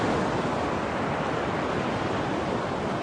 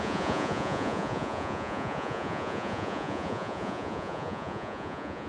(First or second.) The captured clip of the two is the first